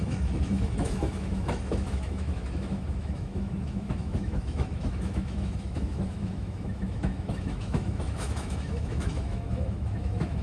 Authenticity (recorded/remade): remade